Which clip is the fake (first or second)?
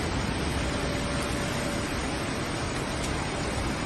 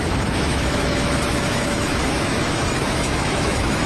second